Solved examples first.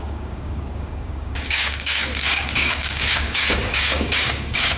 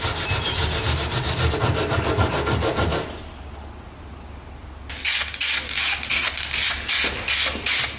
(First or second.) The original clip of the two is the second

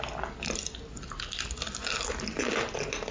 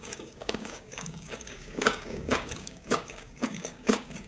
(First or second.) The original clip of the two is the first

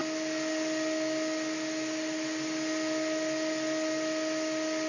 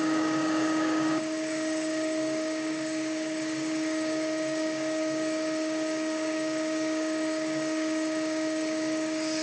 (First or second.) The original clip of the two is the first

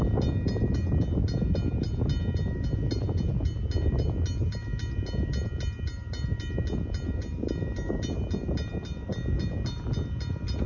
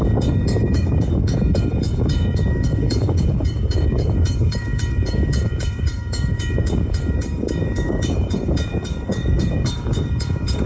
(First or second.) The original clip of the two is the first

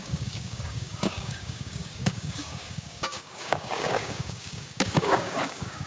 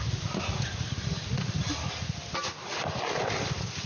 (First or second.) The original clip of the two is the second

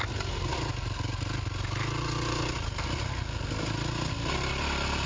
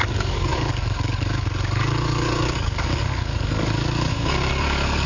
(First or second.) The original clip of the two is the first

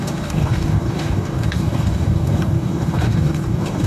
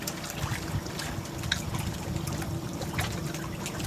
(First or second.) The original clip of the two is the second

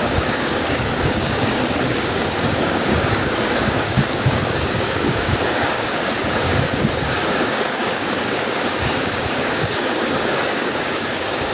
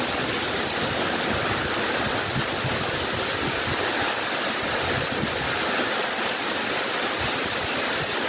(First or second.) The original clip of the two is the second